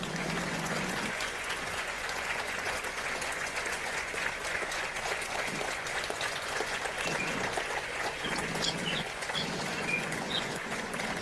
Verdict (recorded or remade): remade